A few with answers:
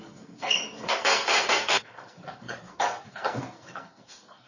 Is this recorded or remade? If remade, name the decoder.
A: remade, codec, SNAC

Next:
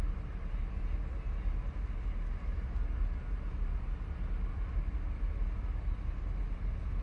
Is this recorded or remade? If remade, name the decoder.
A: recorded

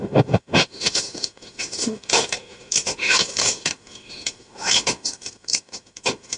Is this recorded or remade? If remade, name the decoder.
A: remade, autoencoder, DAC-VAE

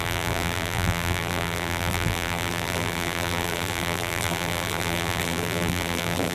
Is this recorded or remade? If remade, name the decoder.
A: remade, vocoder, BigVGAN v2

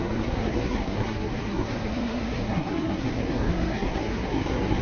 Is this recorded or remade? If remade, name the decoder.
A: remade, codec, SNAC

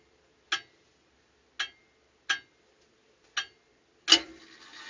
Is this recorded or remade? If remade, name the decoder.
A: recorded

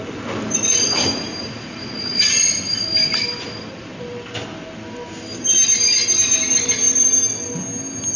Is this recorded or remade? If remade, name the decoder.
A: recorded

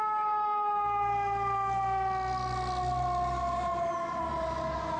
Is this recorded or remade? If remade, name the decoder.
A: recorded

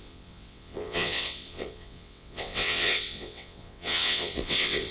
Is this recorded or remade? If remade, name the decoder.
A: remade, vocoder, WaveNeXt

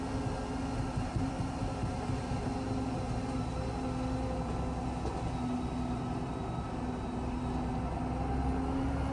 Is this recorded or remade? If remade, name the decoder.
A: recorded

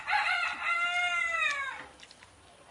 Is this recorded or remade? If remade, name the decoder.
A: recorded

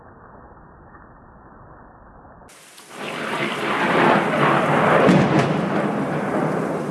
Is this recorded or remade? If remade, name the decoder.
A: remade, vocoder, BigVGAN v2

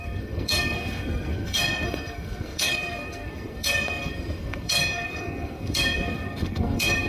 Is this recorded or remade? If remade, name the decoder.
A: remade, codec, SNAC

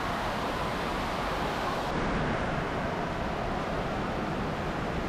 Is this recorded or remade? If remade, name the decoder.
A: recorded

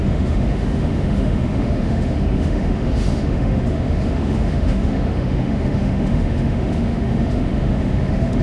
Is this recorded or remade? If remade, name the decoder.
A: remade, autoencoder, DAC-VAE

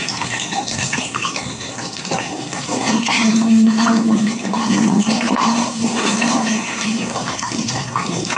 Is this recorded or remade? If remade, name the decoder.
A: remade, codec, SNAC